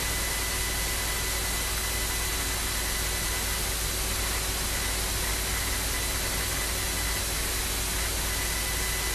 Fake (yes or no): no